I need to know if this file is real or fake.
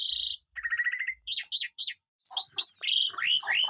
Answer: real